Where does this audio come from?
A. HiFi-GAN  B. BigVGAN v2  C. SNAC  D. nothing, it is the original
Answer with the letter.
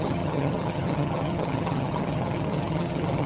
A